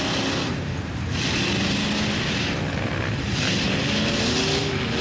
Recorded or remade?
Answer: recorded